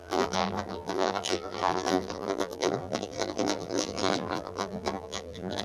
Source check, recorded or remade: remade